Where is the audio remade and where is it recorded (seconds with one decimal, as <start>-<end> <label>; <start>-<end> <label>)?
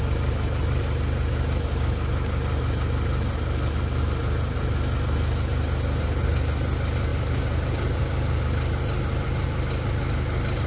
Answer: 0.0-10.7 recorded